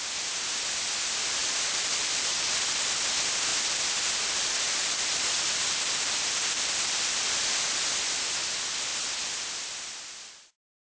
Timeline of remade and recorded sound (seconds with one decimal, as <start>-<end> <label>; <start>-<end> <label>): 0.0-1.4 recorded; 1.4-2.7 remade; 2.7-3.5 recorded; 3.5-7.3 remade; 7.3-8.9 recorded; 8.9-10.3 remade; 10.3-10.9 recorded